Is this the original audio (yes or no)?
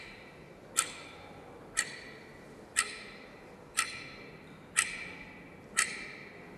yes